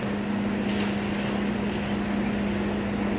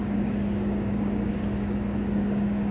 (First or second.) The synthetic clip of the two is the second